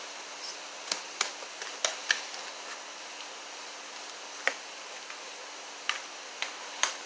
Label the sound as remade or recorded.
recorded